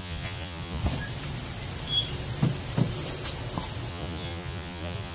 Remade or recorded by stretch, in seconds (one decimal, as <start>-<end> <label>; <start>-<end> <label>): 0.0-0.8 remade; 0.8-3.9 recorded; 3.9-5.1 remade